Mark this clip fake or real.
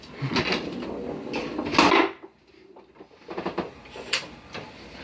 real